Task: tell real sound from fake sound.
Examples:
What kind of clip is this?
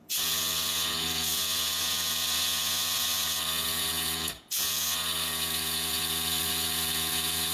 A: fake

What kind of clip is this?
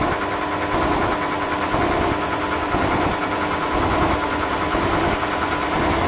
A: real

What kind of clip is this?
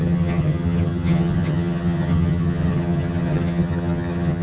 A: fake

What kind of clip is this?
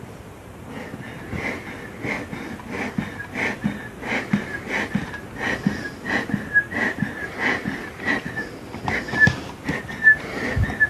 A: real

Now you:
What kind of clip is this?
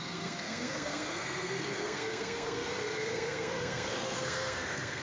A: fake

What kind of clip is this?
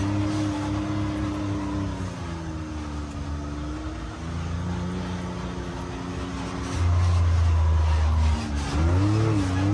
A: real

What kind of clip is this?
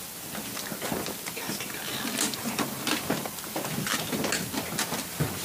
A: real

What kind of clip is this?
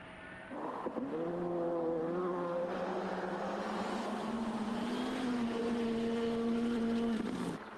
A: real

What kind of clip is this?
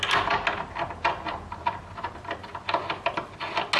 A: real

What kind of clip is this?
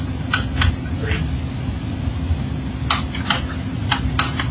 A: real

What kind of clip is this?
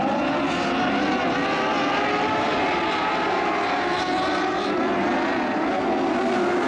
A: real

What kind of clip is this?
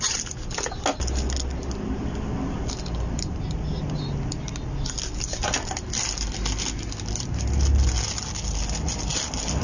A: real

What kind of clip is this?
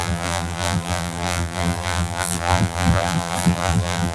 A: fake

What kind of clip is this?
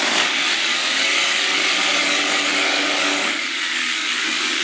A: fake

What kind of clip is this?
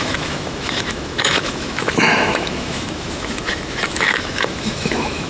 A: fake